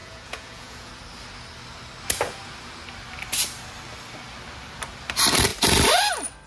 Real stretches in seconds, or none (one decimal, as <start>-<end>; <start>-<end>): 0.9-6.5